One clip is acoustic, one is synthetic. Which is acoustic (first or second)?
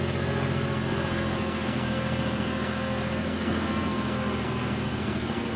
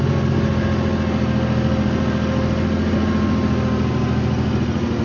second